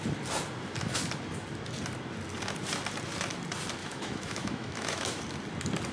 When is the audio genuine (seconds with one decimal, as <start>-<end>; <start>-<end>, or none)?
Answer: 0.0-3.8; 5.2-5.9